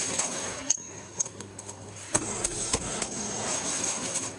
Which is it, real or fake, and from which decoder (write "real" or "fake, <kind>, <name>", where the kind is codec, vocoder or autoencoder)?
fake, codec, SNAC